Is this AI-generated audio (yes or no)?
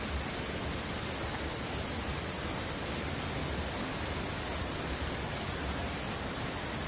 no